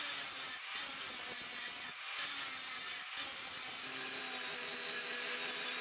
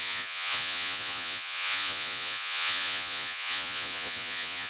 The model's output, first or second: second